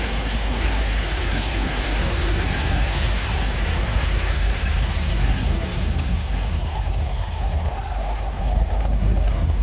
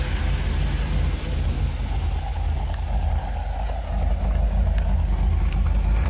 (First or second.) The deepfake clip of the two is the first